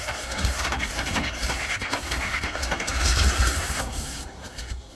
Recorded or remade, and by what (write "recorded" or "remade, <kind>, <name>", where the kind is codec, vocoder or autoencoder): remade, codec, SNAC